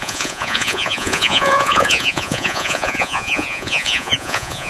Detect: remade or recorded remade